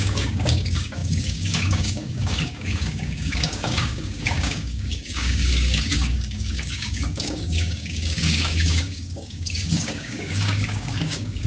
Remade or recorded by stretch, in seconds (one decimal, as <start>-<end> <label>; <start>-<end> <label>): 0.0-11.5 remade